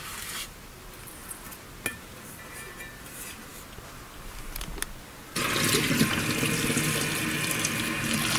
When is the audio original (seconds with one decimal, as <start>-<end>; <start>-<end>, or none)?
0.0-1.9; 2.9-8.4